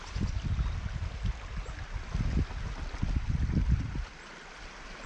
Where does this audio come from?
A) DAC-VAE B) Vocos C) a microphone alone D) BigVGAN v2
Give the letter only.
C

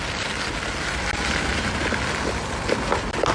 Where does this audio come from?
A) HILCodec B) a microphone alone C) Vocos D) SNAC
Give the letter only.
B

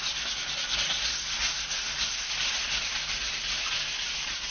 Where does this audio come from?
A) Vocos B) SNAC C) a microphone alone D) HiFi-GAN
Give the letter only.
C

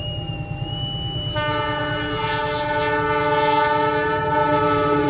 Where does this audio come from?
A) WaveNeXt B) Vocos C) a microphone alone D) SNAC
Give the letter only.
C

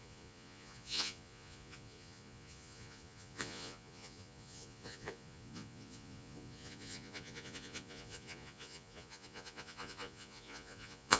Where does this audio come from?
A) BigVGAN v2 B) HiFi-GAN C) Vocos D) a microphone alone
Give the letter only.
C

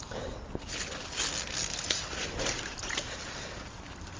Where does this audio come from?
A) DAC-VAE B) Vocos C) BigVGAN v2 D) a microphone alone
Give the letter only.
D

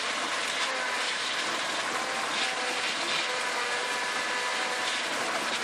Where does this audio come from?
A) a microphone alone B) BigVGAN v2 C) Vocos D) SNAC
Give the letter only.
A